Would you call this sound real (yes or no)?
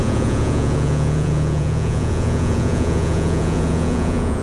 no